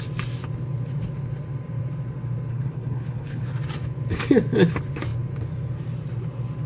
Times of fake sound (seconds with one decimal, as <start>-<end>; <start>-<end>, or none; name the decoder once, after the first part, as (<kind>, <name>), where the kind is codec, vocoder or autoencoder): 2.5-3.5 (codec, HILCodec)